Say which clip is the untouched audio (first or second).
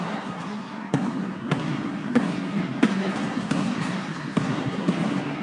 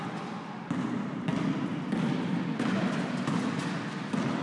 second